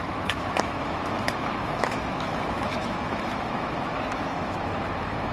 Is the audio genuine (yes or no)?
no